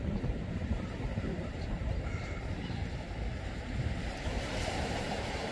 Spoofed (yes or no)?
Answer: yes